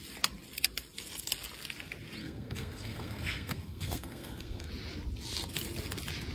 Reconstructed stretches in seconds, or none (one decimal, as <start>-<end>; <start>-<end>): 2.2-4.7